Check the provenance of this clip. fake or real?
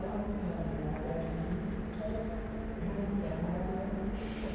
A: real